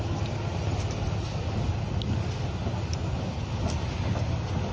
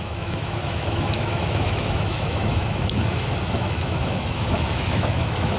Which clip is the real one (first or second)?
first